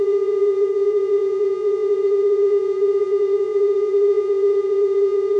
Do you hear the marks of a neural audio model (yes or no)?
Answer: yes